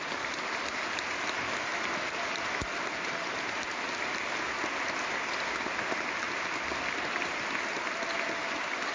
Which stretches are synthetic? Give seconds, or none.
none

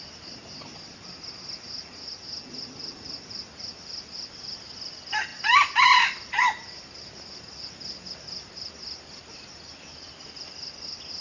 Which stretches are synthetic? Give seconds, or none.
none